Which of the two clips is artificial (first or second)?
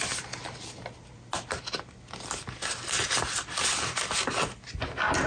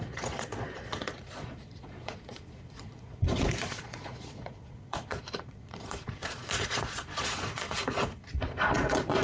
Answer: second